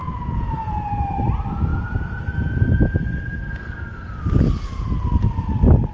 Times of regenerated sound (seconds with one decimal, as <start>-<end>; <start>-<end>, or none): 0.0-1.2